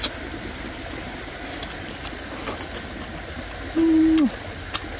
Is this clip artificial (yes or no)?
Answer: no